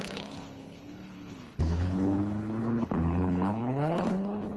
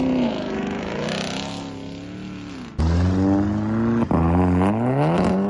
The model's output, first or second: first